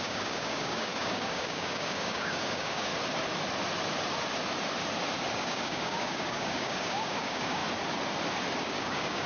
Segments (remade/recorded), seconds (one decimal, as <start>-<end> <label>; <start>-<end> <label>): 0.0-2.9 remade; 2.9-5.3 recorded; 5.3-7.6 remade; 7.6-8.6 recorded; 8.6-9.3 remade